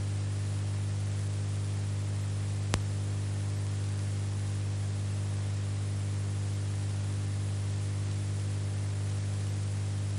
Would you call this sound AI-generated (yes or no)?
no